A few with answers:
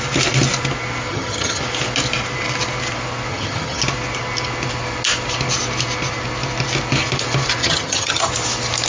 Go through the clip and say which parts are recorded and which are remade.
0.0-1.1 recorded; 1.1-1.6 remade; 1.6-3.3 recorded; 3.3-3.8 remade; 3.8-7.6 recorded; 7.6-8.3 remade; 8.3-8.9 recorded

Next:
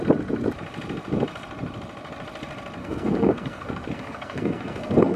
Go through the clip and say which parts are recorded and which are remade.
0.0-2.8 recorded; 2.8-5.2 remade

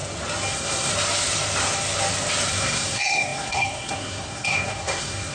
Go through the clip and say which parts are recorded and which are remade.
0.0-0.5 recorded; 0.5-0.9 remade; 0.9-2.5 recorded; 2.5-5.3 remade